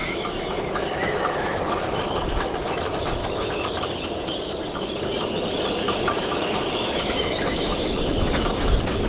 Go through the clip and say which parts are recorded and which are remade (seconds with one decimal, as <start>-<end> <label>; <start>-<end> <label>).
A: 0.0-3.2 remade; 3.2-6.0 recorded; 6.0-9.1 remade